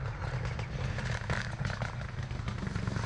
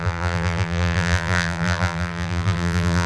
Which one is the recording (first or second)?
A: first